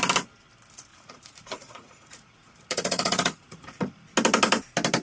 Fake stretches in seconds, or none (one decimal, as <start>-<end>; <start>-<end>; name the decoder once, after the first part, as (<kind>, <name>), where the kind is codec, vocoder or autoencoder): 0.9-3.9 (vocoder, Vocos)